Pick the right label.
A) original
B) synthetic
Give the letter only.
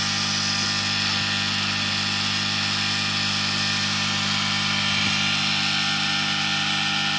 A